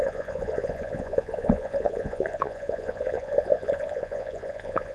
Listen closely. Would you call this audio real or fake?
fake